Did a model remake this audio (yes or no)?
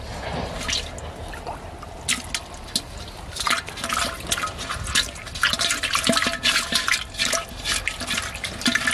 no